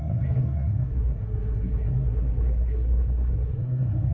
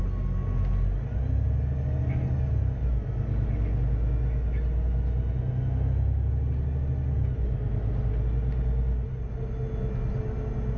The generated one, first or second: first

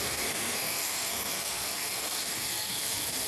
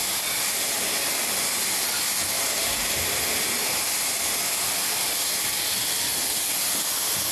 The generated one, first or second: first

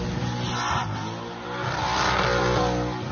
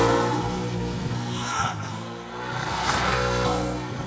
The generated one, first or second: second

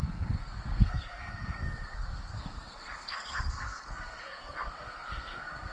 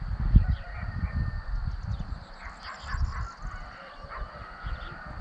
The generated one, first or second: first